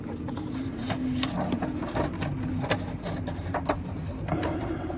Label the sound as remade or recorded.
recorded